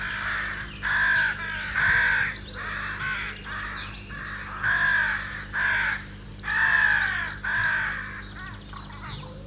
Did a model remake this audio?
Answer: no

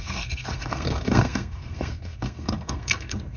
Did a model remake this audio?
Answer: yes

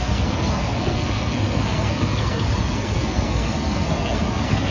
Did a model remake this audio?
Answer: yes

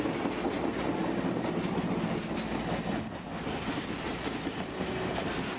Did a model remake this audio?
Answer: no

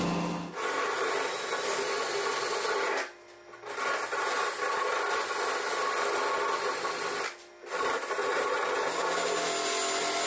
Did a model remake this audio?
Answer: no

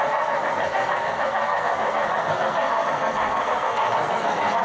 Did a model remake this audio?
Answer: yes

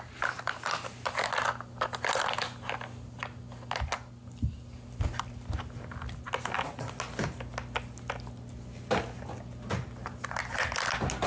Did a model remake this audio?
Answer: no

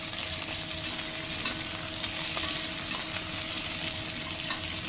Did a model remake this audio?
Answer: no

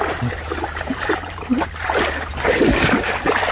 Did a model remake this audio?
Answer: no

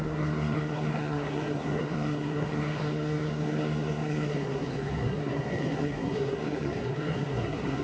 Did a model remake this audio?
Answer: yes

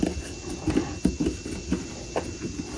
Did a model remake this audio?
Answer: no